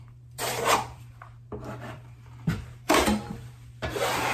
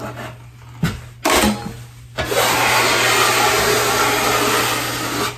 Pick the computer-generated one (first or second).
first